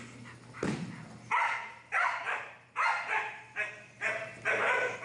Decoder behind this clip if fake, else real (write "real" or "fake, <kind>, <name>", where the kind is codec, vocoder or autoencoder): real